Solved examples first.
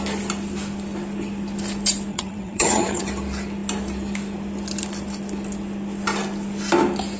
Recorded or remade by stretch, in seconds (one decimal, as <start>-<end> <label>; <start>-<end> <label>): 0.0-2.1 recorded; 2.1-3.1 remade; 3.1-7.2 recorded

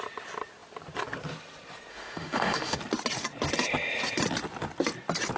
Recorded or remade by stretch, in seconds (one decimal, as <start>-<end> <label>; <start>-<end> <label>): 0.0-1.9 recorded; 1.9-2.8 remade; 2.8-5.4 recorded

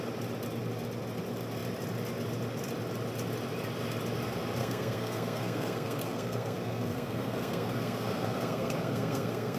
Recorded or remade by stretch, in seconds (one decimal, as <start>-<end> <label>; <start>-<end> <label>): 0.0-4.6 recorded; 4.6-9.6 remade

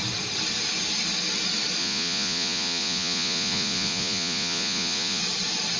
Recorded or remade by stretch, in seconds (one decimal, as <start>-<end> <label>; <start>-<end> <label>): 0.0-1.8 recorded; 1.8-5.2 remade; 5.2-5.8 recorded

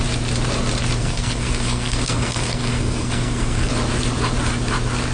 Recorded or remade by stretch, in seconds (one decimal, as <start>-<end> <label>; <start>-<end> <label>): 0.0-1.0 recorded; 1.0-3.7 remade; 3.7-5.1 recorded

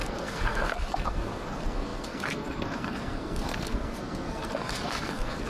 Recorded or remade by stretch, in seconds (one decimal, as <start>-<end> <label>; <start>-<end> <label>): 0.0-5.5 remade